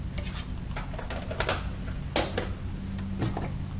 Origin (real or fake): real